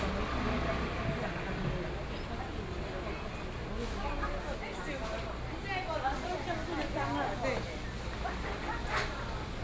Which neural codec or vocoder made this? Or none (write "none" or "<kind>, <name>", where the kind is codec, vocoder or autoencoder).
none